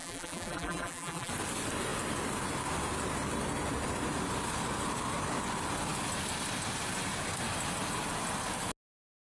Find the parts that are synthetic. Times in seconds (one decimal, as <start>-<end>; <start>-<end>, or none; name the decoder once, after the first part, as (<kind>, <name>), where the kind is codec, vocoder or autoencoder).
0.0-1.3 (vocoder, BigVGAN v2)